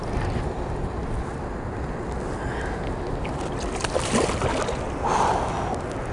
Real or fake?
real